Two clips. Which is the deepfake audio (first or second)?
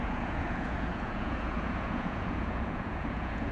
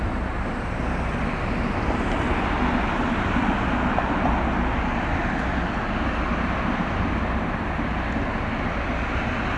first